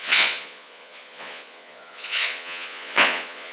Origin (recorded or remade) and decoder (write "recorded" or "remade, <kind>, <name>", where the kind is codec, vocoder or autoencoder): remade, vocoder, Vocos